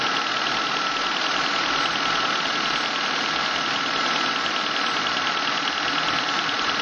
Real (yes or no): no